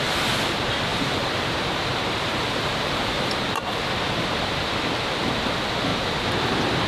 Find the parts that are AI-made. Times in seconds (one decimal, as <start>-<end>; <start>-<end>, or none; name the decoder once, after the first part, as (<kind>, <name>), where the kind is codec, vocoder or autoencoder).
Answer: 0.9-3.7 (vocoder, BigVGAN v2); 5.9-6.5